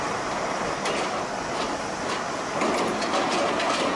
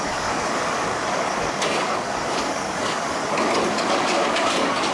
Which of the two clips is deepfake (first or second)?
second